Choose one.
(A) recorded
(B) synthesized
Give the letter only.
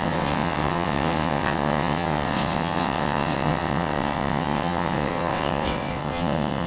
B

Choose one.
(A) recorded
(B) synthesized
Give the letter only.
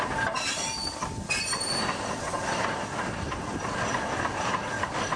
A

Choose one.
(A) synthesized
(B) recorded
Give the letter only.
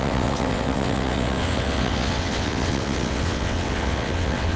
A